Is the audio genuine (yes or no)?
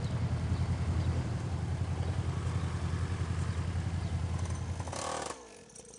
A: yes